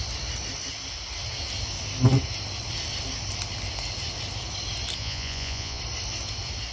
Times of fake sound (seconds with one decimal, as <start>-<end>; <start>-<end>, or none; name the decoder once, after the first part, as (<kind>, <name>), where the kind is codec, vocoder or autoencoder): 5.0-5.8 (vocoder, Vocos)